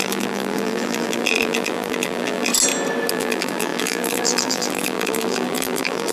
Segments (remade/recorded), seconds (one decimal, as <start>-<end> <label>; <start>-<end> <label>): 0.0-2.5 remade; 2.5-3.1 recorded; 3.1-6.1 remade